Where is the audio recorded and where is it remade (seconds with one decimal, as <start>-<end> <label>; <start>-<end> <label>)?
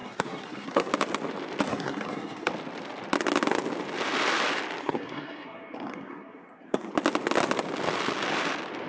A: 0.0-0.9 remade; 0.9-1.7 recorded; 1.7-2.5 remade; 2.5-4.8 recorded; 4.8-6.9 remade; 6.9-8.9 recorded